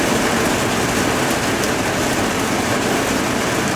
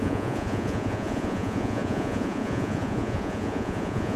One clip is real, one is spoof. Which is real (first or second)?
first